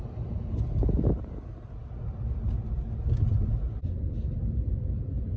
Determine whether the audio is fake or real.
real